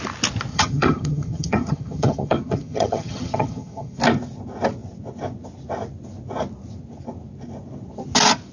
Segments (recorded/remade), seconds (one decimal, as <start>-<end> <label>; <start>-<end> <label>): 0.0-0.5 recorded; 0.5-4.0 remade; 4.0-8.5 recorded